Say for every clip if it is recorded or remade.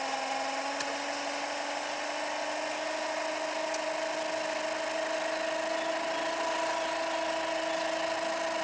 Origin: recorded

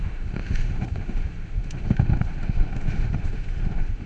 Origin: remade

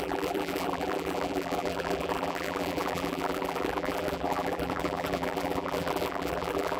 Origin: remade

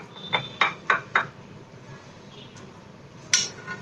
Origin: recorded